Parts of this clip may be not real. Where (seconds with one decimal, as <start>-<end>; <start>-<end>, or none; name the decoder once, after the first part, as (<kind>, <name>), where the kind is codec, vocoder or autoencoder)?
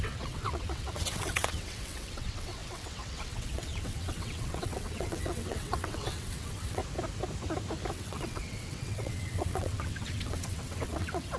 0.0-6.8 (vocoder, WaveNeXt); 7.9-11.4